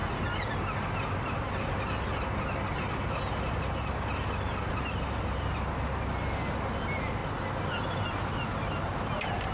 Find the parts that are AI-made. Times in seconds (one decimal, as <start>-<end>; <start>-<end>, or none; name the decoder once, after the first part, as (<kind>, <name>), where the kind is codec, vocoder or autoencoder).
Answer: none